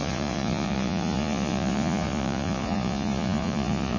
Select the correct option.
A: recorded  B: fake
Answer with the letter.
B